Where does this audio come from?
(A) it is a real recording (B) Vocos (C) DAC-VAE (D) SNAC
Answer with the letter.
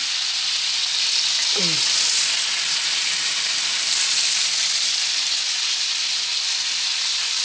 A